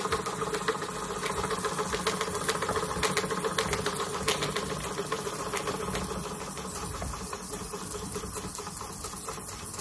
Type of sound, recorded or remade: recorded